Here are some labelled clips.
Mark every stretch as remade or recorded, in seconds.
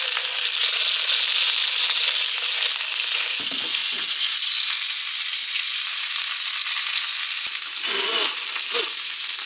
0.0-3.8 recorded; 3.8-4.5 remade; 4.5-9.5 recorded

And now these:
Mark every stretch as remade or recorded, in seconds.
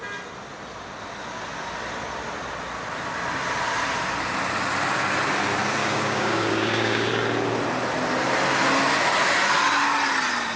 0.0-5.8 recorded; 5.8-7.1 remade; 7.1-10.6 recorded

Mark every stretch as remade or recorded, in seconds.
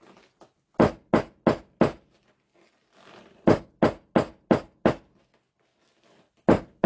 0.0-6.9 recorded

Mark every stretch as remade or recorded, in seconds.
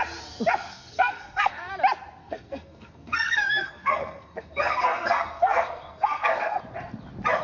0.0-0.7 recorded; 0.7-1.7 remade; 1.7-2.2 recorded; 2.2-6.6 remade; 6.6-7.4 recorded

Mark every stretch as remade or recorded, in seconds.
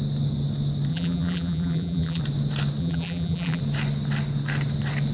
0.0-0.9 recorded; 0.9-2.2 remade; 2.2-2.8 recorded; 2.8-3.6 remade; 3.6-5.1 recorded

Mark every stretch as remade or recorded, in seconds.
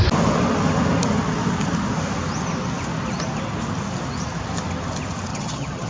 0.0-5.3 recorded; 5.3-5.9 remade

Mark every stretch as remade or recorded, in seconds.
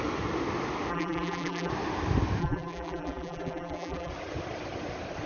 0.0-0.9 recorded; 0.9-1.7 remade; 1.7-2.4 recorded; 2.4-4.1 remade; 4.1-5.3 recorded